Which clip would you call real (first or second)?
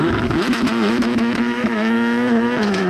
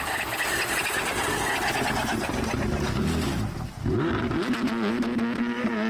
second